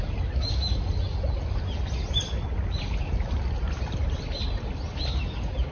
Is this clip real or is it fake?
real